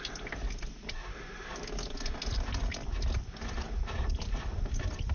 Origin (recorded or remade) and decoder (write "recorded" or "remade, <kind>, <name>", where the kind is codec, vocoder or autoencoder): recorded